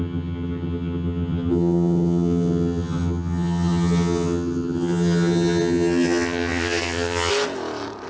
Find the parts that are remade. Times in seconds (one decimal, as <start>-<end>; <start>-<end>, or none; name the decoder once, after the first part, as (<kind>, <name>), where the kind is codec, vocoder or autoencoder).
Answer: 0.0-7.3 (vocoder, HiFi-GAN)